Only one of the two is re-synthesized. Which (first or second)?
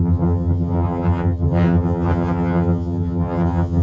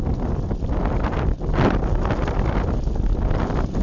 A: first